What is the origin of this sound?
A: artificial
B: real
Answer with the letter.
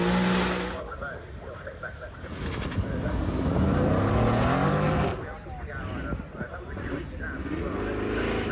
B